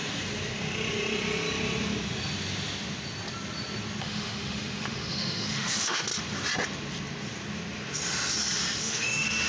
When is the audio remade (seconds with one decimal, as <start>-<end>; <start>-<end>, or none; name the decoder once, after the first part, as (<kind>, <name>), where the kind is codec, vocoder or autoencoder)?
4.0-6.1 (autoencoder, DAC-VAE); 8.8-9.5